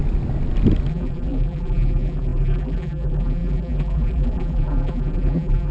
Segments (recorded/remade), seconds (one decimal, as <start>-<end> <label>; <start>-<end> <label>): 0.0-0.9 recorded; 0.9-5.7 remade